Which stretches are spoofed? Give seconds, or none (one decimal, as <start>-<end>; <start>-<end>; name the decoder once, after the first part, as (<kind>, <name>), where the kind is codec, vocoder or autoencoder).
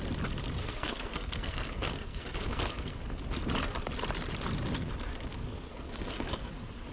0.6-3.0 (codec, SNAC); 5.7-6.5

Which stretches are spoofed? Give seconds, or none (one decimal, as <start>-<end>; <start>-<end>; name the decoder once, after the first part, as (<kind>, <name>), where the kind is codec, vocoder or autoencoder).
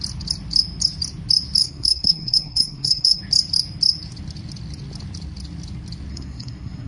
1.6-3.2 (codec, SNAC); 6.1-6.9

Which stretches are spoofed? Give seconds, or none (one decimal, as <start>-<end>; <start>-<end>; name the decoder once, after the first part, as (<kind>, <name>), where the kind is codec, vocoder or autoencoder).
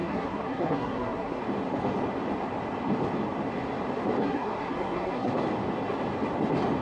0.0-1.4 (codec, SNAC); 4.2-5.3